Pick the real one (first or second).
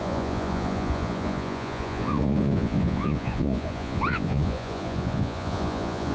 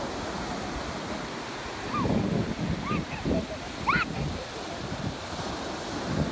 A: second